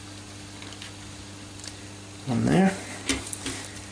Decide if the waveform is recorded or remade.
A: recorded